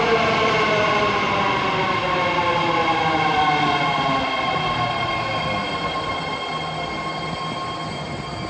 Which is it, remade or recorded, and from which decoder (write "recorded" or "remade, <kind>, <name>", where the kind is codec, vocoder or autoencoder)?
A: recorded